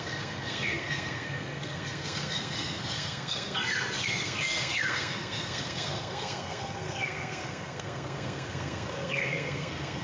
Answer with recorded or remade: remade